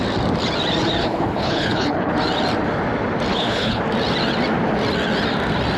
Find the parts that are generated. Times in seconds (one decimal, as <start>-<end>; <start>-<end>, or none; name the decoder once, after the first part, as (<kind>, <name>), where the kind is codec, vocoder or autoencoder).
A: 1.0-2.1 (codec, HILCodec); 3.3-3.8